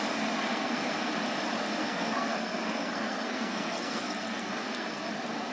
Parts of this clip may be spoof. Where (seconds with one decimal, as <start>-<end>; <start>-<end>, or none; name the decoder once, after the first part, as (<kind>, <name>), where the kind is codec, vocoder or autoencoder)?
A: 0.5-1.1 (codec, SNAC); 1.8-5.1

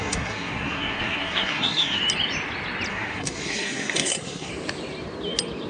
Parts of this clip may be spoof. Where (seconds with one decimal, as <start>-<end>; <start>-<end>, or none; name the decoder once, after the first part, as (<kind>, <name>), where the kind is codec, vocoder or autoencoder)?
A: 0.0-2.0 (codec, SNAC); 2.9-4.5

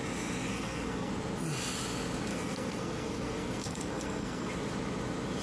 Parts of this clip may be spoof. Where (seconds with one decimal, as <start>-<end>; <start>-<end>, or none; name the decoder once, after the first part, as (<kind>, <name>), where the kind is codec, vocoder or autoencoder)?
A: 0.5-1.1 (codec, SNAC); 2.3-4.5

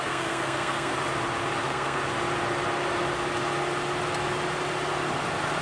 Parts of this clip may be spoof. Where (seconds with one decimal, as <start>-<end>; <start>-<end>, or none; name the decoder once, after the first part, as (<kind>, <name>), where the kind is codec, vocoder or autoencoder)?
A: 0.0-0.9 (codec, SNAC); 1.6-2.0

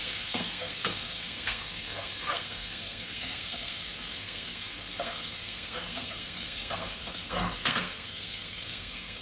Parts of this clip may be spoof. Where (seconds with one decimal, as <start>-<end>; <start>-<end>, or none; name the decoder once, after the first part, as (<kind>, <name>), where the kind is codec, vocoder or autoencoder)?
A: 0.0-9.2 (codec, SNAC)

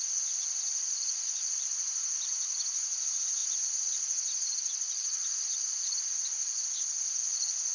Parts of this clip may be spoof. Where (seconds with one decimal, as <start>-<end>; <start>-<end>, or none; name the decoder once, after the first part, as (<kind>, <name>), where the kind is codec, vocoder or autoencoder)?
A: none

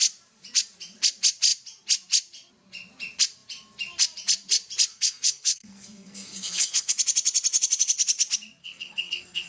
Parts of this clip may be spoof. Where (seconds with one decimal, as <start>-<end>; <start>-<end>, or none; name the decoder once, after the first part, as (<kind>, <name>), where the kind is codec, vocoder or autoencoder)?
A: 4.9-6.9 (codec, SNAC); 8.6-9.5

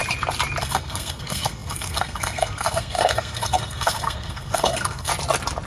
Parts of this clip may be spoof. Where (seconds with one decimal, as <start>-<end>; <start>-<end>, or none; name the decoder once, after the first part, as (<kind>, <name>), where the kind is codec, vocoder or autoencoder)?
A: 0.6-5.1 (codec, SNAC)